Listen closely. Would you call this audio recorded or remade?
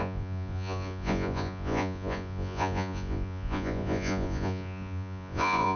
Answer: remade